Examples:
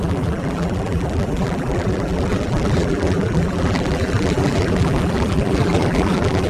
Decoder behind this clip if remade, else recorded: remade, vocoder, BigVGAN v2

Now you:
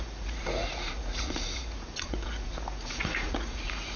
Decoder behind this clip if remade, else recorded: remade, vocoder, Vocos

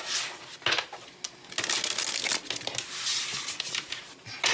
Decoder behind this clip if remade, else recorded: recorded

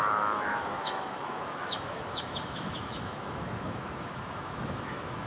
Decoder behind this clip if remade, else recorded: remade, autoencoder, DAC-VAE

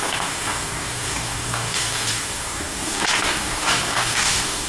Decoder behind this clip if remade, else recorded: remade, codec, DAC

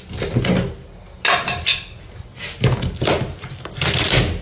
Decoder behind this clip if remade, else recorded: recorded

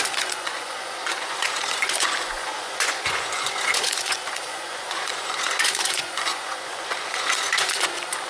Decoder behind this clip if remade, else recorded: remade, vocoder, Vocos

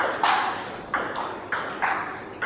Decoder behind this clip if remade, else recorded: recorded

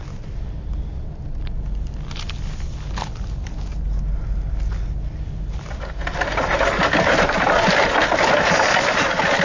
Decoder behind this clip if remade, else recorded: recorded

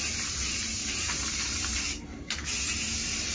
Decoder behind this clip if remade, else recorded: remade, vocoder, BigVGAN v2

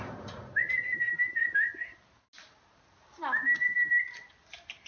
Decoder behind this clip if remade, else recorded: recorded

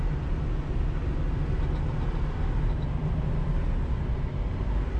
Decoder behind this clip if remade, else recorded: recorded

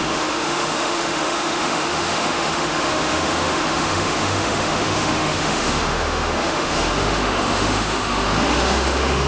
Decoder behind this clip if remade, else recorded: remade, autoencoder, DAC-VAE